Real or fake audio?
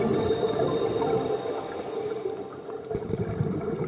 real